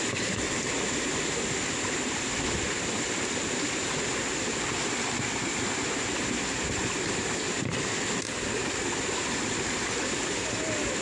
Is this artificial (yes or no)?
no